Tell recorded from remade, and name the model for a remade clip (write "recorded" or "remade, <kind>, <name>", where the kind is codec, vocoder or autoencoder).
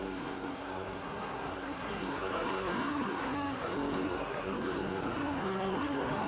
remade, codec, SNAC